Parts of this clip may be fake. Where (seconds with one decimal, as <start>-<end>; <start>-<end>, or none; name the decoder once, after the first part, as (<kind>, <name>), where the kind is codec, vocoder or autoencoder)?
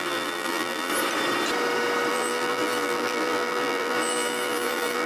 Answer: 0.0-0.9 (vocoder, BigVGAN v2); 2.1-5.1